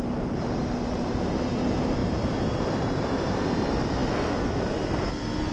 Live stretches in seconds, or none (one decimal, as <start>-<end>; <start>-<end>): 0.0-2.0; 3.3-5.5